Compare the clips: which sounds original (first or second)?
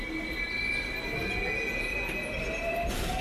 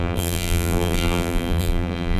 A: first